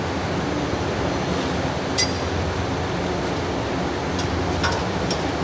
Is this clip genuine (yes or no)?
yes